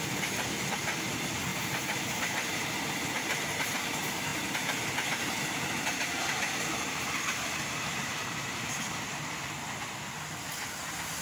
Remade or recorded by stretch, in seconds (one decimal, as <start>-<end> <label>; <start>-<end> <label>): 0.0-1.5 recorded; 1.5-2.7 remade; 2.7-4.3 recorded; 4.3-8.8 remade; 8.8-11.2 recorded